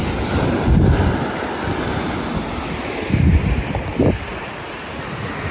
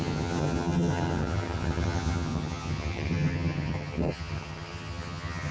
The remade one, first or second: second